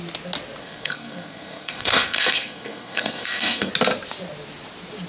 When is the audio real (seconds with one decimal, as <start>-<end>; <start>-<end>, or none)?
0.0-0.6; 3.7-5.1